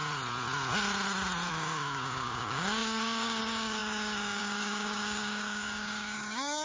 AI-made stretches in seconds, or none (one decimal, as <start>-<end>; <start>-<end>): 1.5-6.6